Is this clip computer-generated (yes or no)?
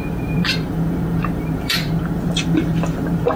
yes